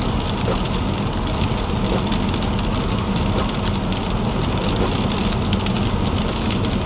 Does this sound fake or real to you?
real